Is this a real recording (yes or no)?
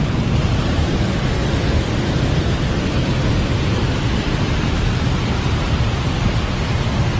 yes